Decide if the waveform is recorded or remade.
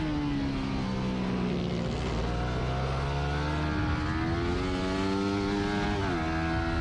recorded